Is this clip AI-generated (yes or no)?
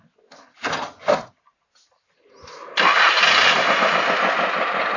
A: no